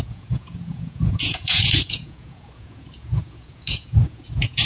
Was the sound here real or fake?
fake